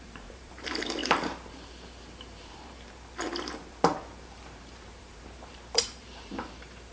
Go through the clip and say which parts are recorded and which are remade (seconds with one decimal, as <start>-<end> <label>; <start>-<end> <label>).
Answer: 0.0-6.9 remade